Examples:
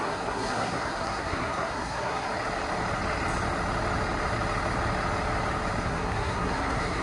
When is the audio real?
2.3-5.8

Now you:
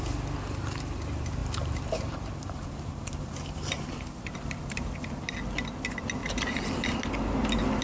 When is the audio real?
0.0-1.4; 5.1-6.2; 6.7-7.8